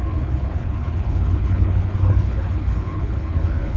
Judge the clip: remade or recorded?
remade